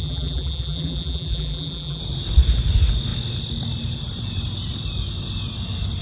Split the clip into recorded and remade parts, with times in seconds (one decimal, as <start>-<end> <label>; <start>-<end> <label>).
0.0-2.0 remade; 2.0-6.0 recorded